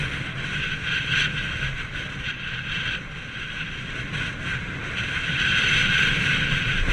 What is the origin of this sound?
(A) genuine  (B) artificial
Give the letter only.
A